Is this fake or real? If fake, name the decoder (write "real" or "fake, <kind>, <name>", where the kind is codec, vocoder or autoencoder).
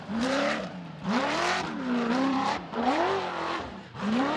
fake, vocoder, BigVGAN v2